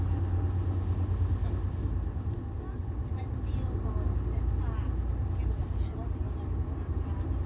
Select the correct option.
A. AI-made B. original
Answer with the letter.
B